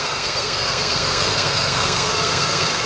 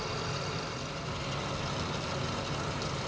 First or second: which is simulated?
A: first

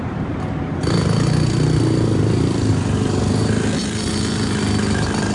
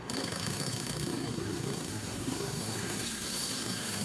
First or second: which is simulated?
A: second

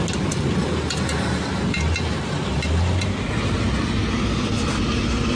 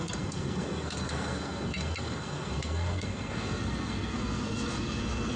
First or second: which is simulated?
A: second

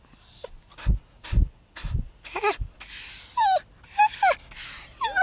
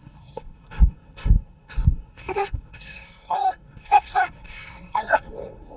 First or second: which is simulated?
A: second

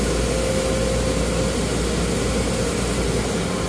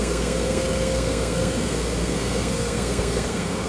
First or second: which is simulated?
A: second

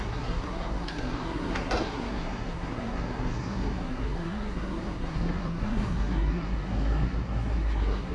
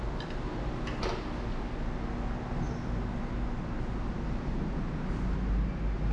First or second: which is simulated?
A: first